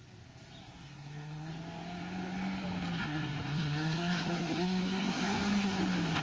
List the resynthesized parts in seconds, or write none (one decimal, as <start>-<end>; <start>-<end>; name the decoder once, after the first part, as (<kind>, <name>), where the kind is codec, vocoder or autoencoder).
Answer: 0.6-1.5 (codec, SNAC); 3.0-5.8